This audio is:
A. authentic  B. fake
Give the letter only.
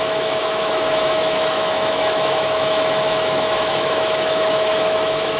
B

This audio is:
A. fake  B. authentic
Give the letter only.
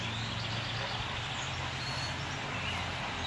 B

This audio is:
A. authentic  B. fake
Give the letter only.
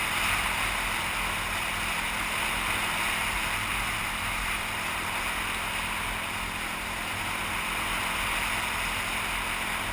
A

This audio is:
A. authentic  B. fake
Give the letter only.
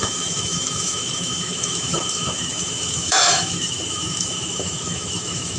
B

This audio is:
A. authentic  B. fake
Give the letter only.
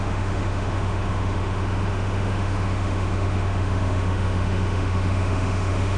B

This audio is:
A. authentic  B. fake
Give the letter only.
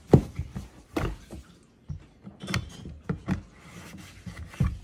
A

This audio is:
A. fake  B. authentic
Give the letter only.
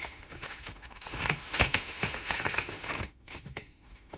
A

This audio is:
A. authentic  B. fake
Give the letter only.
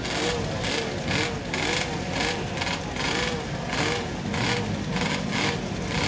A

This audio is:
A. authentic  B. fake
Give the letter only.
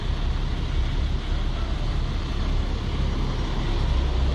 A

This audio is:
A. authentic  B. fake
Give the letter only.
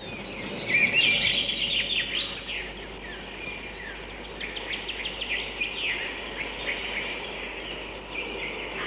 A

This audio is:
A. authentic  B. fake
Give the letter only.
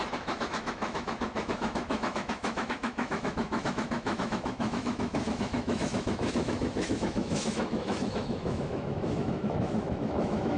B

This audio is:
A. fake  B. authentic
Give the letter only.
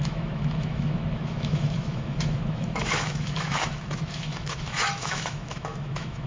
A